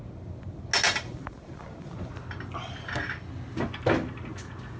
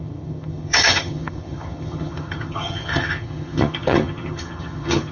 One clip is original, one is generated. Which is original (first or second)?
first